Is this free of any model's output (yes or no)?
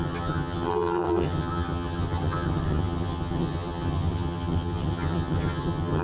no